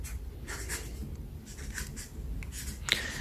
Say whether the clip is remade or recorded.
recorded